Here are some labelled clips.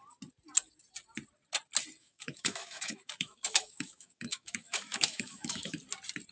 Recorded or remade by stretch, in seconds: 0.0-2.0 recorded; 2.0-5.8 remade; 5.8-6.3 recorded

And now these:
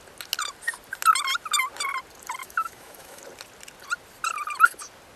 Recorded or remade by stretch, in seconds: 0.0-2.4 recorded; 2.4-3.2 remade; 3.2-5.2 recorded